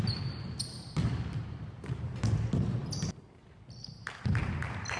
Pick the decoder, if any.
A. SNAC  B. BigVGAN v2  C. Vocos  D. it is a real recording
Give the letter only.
D